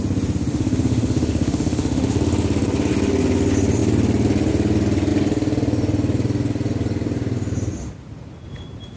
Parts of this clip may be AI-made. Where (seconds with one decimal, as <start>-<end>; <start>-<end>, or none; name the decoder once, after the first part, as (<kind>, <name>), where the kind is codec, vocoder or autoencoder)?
0.5-2.2 (autoencoder, DAC-VAE)